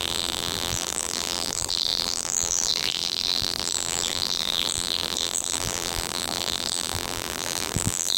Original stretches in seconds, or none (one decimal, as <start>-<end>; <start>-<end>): none